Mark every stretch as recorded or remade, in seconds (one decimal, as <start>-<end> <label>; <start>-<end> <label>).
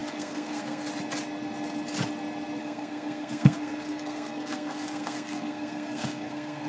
0.0-0.9 remade; 0.9-2.6 recorded; 2.6-6.7 remade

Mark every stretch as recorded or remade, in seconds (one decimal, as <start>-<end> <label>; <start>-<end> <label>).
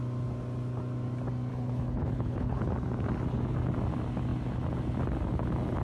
0.0-1.5 recorded; 1.5-2.7 remade; 2.7-5.8 recorded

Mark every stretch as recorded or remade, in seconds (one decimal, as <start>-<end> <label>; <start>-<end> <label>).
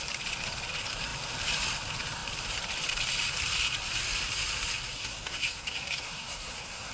0.0-5.0 recorded; 5.0-6.9 remade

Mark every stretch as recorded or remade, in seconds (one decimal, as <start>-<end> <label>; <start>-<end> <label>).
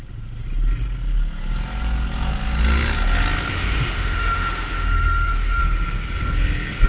0.0-3.5 recorded; 3.5-5.6 remade; 5.6-6.9 recorded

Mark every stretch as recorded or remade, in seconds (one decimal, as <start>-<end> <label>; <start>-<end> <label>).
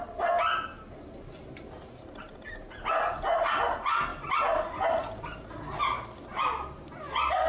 0.0-7.5 recorded